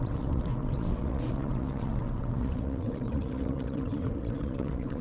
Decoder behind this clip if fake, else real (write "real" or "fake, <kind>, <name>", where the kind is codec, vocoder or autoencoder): fake, vocoder, WaveNeXt